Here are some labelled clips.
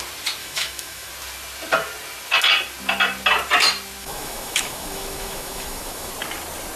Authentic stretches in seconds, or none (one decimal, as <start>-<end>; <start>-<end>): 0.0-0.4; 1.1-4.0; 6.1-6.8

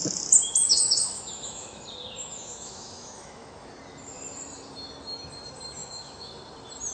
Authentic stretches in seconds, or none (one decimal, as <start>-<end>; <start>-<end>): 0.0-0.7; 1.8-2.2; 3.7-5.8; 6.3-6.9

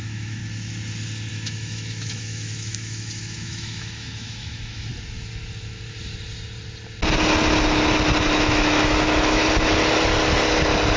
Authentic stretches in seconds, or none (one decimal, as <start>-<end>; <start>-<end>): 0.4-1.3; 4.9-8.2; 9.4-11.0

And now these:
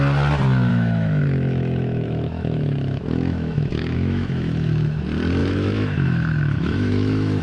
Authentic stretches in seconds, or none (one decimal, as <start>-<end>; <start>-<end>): 0.0-0.7; 5.0-5.4

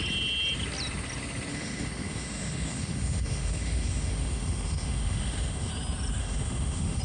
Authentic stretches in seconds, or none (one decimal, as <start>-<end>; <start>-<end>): 0.0-1.5; 5.7-6.2